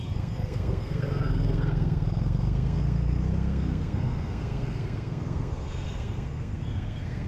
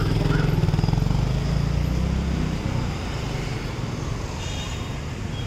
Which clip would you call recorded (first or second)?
second